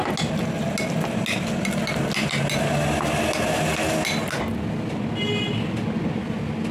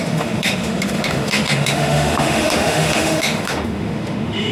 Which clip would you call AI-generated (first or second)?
second